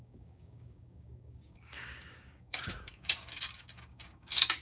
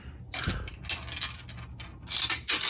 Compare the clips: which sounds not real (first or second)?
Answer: first